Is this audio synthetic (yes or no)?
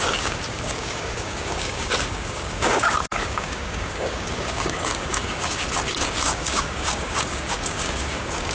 yes